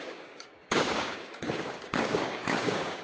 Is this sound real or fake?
fake